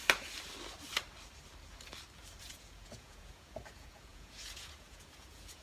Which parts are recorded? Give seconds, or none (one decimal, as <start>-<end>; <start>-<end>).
0.0-2.4